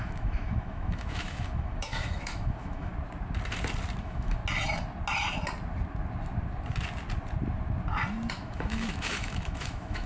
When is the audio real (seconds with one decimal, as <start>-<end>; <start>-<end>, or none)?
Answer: 2.9-4.0; 4.4-8.3